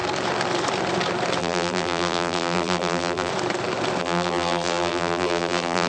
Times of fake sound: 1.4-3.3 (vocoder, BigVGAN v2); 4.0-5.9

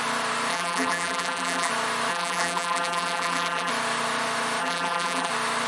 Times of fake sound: 0.5-1.7 (vocoder, BigVGAN v2); 2.1-3.7; 4.6-5.3